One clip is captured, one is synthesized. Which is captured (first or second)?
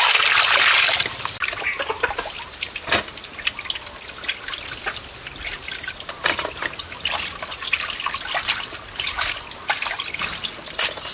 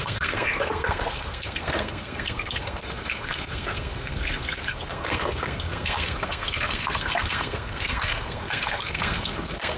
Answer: first